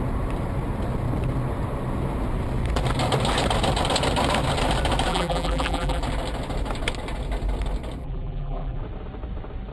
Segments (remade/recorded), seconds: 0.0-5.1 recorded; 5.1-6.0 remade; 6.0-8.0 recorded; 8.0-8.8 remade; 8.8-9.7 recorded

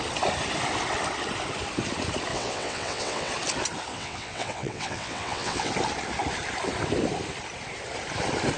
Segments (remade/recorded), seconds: 0.0-2.3 recorded; 2.3-3.3 remade; 3.3-3.9 recorded; 3.9-5.7 remade; 5.7-8.6 recorded

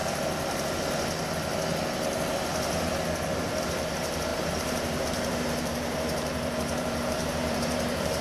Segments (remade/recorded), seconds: 0.0-3.6 recorded; 3.6-8.2 remade

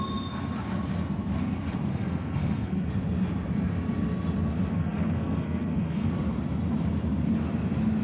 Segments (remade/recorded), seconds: 0.0-1.9 recorded; 1.9-2.9 remade; 2.9-4.7 recorded; 4.7-6.1 remade; 6.1-8.0 recorded